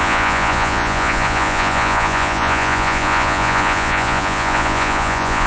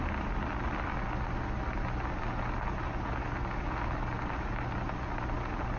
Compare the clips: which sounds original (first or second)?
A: second